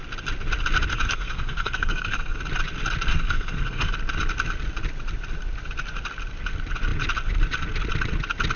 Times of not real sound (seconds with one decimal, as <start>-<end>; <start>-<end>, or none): 0.9-2.4; 3.1-3.9